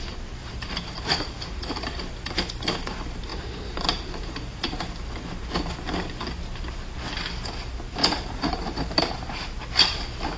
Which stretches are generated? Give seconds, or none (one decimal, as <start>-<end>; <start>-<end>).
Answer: 0.4-2.1; 3.3-4.8; 8.0-9.1